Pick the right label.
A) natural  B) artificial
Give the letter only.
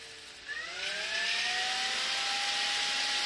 A